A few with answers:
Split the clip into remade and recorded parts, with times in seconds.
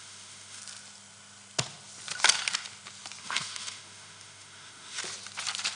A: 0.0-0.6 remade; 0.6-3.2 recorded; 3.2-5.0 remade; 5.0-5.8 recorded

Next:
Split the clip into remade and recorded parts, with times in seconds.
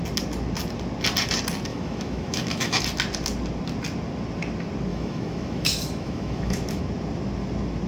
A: 0.0-1.7 recorded; 1.7-2.8 remade; 2.8-4.9 recorded; 4.9-6.8 remade; 6.8-7.9 recorded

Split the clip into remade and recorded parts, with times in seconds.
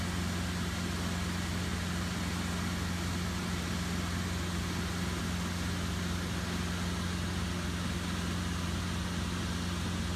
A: 0.0-10.2 recorded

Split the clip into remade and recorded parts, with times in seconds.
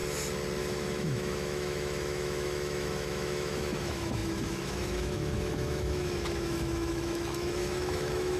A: 0.0-0.6 recorded; 0.6-8.4 remade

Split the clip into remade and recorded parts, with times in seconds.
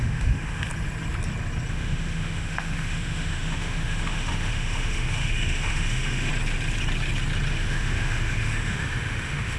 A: 0.0-0.7 remade; 0.7-1.7 recorded; 1.7-6.3 remade; 6.3-7.5 recorded; 7.5-9.6 remade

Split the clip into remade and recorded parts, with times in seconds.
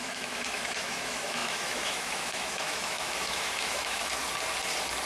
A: 0.0-4.2 remade; 4.2-5.1 recorded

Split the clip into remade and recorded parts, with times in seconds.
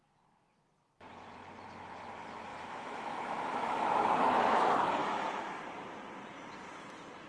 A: 0.0-2.5 recorded; 2.5-3.9 remade; 3.9-5.0 recorded; 5.0-5.6 remade; 5.6-7.3 recorded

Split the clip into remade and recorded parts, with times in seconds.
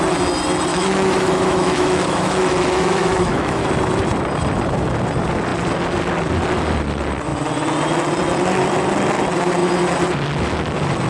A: 0.0-0.7 recorded; 0.7-3.7 remade; 3.7-11.1 recorded